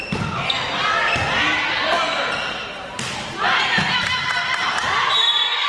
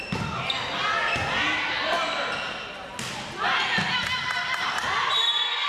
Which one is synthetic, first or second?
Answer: first